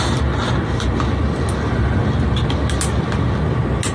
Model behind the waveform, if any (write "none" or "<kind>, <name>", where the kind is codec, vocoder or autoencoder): none